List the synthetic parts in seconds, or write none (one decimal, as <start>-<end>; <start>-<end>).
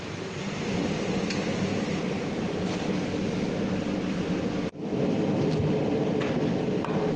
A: none